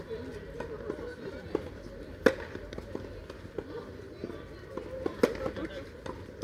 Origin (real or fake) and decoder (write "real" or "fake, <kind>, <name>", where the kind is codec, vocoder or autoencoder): real